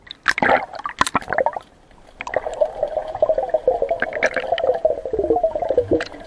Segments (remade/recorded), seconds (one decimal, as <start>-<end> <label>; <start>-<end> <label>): 0.0-3.0 recorded; 3.0-3.6 remade; 3.6-5.5 recorded; 5.5-6.3 remade

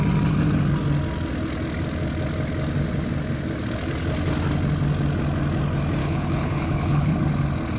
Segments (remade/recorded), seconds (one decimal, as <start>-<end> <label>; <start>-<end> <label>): 0.0-6.0 recorded; 6.0-7.1 remade; 7.1-7.8 recorded

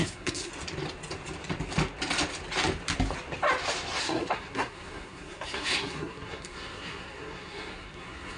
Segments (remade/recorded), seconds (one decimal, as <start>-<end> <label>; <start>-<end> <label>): 0.0-0.5 remade; 0.5-4.0 recorded; 4.0-8.4 remade

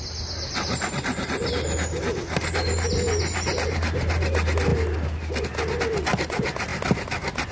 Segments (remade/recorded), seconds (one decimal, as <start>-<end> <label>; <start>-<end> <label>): 0.0-7.5 recorded

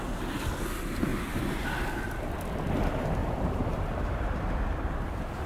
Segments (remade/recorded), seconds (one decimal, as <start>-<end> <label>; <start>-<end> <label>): 0.0-1.1 recorded; 1.1-1.6 remade; 1.6-3.2 recorded; 3.2-5.5 remade